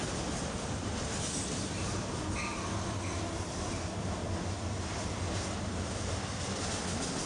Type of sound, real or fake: real